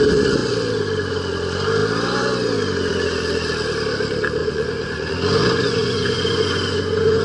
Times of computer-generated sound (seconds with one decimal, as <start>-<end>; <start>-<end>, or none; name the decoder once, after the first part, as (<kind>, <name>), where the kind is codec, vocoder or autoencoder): 4.4-7.2 (vocoder, Vocos)